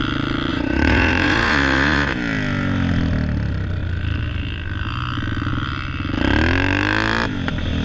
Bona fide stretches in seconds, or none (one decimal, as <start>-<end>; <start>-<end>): 0.0-0.5; 2.1-7.8